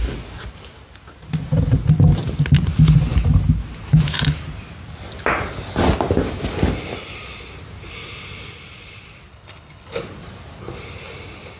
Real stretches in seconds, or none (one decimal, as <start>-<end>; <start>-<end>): 0.0-9.3; 10.0-11.6